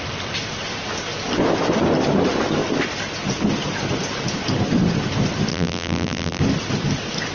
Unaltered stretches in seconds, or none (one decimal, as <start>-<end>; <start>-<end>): 0.0-5.5; 6.4-7.3

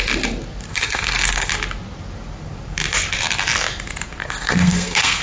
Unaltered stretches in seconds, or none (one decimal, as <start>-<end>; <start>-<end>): 0.0-0.7; 1.5-4.2

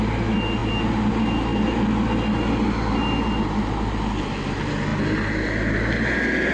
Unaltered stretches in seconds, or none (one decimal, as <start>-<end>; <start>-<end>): 0.0-6.5

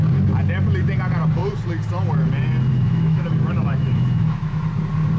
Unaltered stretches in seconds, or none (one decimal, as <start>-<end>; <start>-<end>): 0.0-2.7; 4.6-5.2

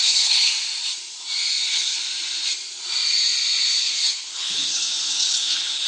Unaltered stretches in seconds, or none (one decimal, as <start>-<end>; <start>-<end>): 0.5-1.6; 2.0-3.8